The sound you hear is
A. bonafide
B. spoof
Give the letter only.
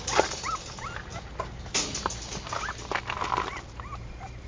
A